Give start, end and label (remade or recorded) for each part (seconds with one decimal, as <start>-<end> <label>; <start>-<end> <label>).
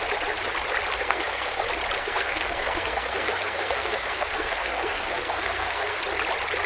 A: 0.0-1.0 recorded; 1.0-1.6 remade; 1.6-2.0 recorded; 2.0-6.0 remade; 6.0-6.7 recorded